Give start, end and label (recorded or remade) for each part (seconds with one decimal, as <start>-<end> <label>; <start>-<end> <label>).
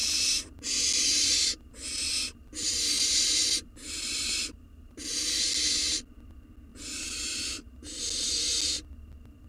0.0-0.7 remade; 0.7-1.1 recorded; 1.1-5.5 remade; 5.5-6.7 recorded; 6.7-8.0 remade; 8.0-9.5 recorded